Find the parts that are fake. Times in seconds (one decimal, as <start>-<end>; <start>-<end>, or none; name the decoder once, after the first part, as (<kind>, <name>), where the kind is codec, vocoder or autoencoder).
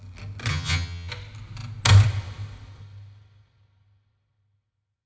0.5-1.1 (vocoder, HiFi-GAN)